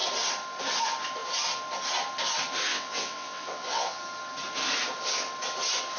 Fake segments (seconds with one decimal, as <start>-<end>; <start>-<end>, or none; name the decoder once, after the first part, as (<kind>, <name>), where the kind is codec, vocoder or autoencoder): 2.7-4.0 (vocoder, WaveNeXt)